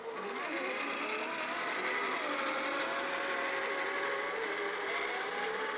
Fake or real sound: real